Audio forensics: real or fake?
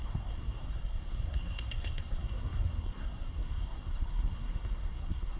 fake